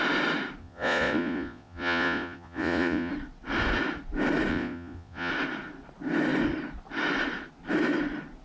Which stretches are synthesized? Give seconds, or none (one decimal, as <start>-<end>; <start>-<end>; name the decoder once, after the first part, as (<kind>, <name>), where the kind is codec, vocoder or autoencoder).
0.6-3.1 (vocoder, Vocos); 4.5-5.3